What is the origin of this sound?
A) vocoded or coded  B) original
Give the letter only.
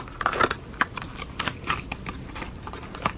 B